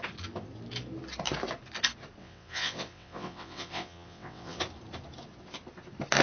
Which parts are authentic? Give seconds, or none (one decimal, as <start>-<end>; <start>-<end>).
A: 0.0-2.2; 4.6-6.2

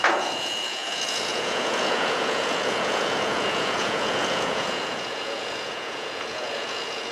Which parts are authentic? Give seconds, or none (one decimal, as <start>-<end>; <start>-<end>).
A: none

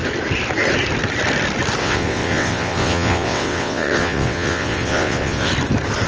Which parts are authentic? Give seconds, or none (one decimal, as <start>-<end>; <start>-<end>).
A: 0.0-1.8; 5.5-6.1

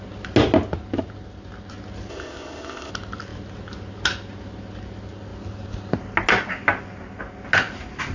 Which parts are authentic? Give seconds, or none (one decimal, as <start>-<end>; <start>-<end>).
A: 0.0-2.1; 2.9-8.1

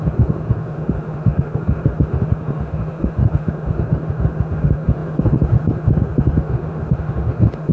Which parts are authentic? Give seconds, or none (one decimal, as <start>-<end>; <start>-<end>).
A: none

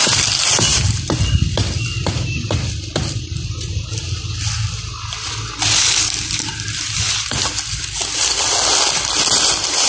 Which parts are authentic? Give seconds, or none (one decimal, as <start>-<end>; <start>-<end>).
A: 0.0-9.9

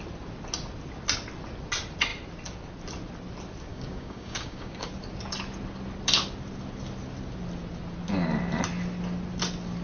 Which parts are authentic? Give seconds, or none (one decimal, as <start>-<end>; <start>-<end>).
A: 0.0-3.7; 4.9-9.8

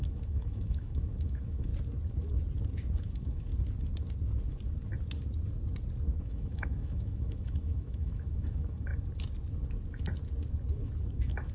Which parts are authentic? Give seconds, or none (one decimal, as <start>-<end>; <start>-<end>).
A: 1.7-3.0; 3.5-6.2; 8.9-11.0